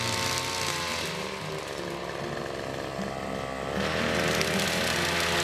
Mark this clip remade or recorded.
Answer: recorded